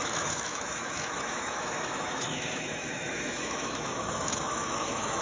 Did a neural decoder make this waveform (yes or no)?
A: yes